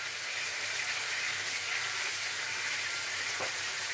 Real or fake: fake